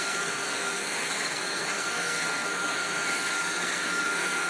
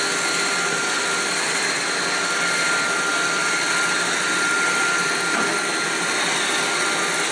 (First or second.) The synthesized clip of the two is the first